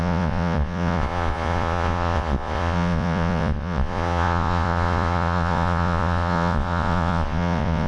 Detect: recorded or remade remade